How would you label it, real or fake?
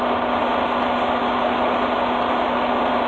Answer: real